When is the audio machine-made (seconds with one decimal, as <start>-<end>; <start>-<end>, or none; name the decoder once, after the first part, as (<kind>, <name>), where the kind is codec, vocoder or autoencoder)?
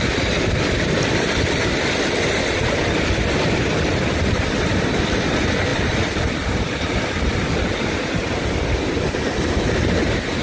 0.0-10.4 (vocoder, BigVGAN v2)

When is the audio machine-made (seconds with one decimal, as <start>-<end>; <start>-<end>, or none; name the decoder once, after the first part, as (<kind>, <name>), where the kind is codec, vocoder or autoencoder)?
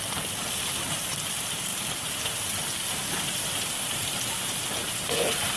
0.0-5.6 (vocoder, BigVGAN v2)